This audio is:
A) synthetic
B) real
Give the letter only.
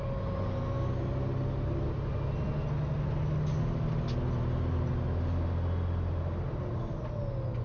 B